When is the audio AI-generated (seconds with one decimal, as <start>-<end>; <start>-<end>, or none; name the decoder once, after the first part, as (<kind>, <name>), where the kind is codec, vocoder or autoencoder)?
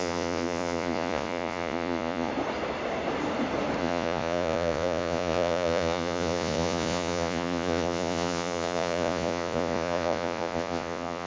0.0-2.3 (vocoder, Vocos); 3.8-11.3